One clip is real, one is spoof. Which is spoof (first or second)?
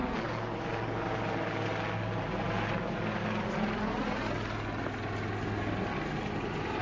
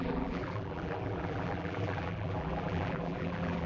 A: second